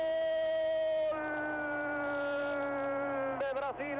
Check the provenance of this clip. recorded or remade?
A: recorded